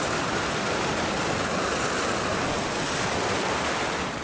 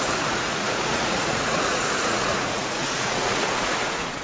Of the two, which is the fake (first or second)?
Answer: second